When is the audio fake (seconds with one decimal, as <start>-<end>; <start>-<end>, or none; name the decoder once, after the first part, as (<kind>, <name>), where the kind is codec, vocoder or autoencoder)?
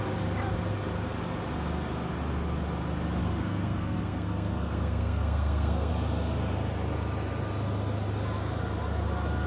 3.2-5.9 (codec, SNAC)